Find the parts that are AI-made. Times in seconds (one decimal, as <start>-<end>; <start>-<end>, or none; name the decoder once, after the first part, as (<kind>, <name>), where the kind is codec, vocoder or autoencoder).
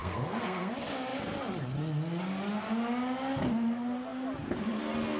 0.0-0.7 (codec, SNAC)